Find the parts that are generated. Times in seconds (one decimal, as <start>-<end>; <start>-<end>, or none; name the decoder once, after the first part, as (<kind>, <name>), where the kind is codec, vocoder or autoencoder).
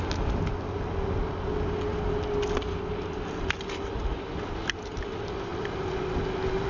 none